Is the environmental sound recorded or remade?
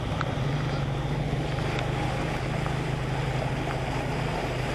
recorded